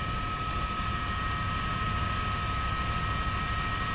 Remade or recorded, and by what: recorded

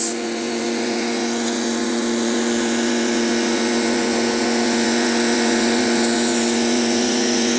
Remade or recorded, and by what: remade, vocoder, Vocos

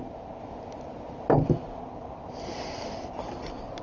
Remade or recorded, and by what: recorded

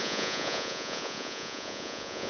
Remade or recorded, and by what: remade, vocoder, Vocos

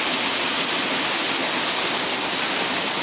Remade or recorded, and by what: recorded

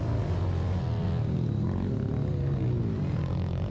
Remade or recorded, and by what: recorded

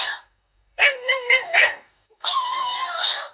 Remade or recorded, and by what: remade, codec, DAC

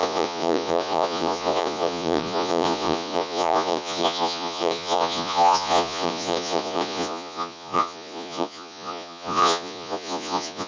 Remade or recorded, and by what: remade, vocoder, Vocos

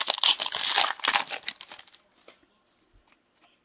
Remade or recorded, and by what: recorded